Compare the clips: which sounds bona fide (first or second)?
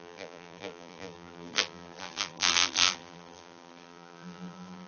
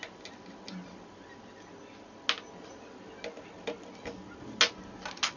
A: second